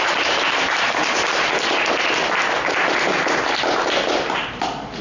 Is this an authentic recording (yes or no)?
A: yes